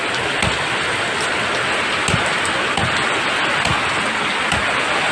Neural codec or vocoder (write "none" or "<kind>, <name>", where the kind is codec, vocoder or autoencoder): none